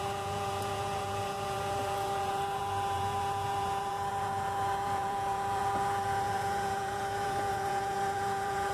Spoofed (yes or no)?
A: yes